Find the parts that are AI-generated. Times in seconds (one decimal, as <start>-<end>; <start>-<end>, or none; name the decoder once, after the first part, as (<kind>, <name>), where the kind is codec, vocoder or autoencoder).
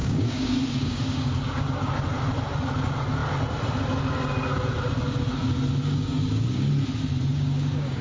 0.0-1.9 (codec, DAC); 5.8-6.7; 7.3-8.0